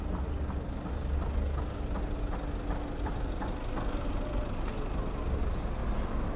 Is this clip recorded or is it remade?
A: recorded